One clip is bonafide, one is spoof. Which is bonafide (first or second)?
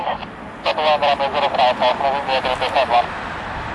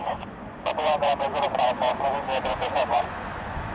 first